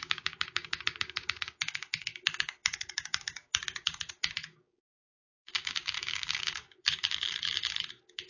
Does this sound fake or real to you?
fake